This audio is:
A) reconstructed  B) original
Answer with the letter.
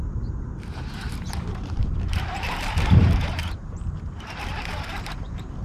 A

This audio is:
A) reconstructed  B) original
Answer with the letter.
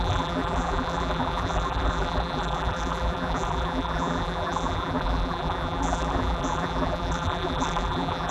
A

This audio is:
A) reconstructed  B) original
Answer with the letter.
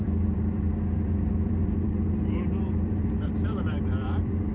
A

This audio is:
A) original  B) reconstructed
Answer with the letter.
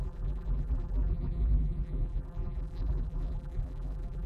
B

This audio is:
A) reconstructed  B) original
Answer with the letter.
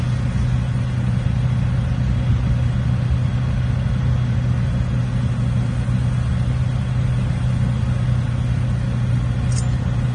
B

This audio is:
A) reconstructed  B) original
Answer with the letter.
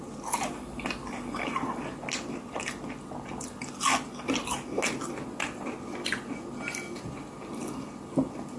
B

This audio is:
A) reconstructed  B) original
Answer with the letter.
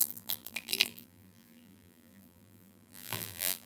A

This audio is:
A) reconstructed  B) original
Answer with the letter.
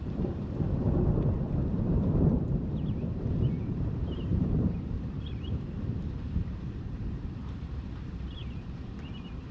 A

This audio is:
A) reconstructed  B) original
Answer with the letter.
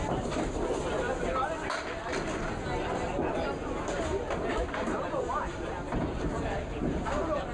B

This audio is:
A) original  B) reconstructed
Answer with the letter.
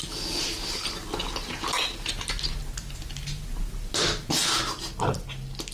A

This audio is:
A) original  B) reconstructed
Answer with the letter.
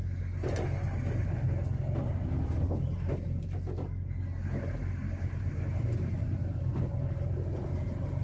A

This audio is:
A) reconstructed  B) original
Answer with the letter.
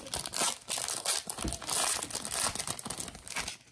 B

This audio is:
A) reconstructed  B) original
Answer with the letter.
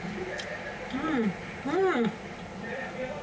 A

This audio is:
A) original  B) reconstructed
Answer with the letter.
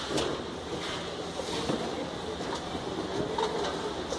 A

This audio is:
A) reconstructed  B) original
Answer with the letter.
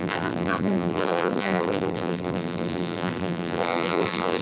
A